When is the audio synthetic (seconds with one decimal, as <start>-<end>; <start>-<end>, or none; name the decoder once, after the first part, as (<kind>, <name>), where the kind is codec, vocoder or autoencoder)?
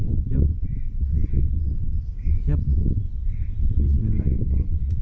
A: 0.0-5.0 (vocoder, WaveNeXt)